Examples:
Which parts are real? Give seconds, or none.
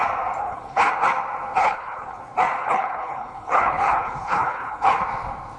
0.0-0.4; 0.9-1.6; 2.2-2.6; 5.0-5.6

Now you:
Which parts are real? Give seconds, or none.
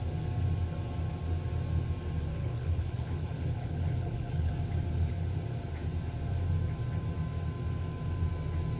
0.0-2.3; 4.5-8.8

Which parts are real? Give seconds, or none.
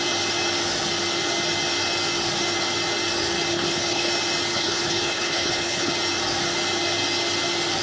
0.0-3.5; 4.1-4.5; 5.9-7.8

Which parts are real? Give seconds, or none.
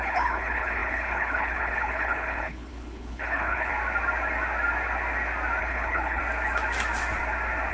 3.7-5.6; 6.2-7.7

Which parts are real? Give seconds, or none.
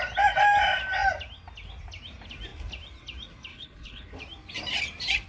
0.0-3.5; 4.2-5.3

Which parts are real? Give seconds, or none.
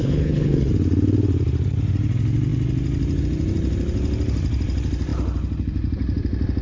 0.7-6.6